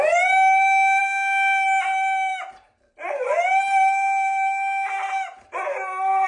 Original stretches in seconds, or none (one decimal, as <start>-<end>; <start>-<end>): 0.0-6.3